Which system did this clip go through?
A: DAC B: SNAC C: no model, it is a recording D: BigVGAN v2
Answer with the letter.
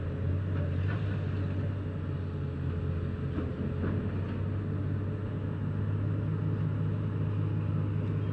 C